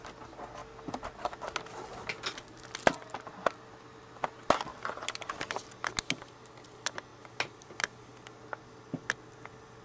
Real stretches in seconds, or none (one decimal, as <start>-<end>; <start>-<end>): 0.0-9.8